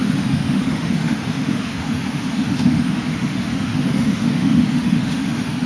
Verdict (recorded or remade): remade